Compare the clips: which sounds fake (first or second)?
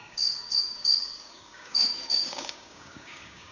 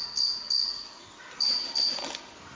first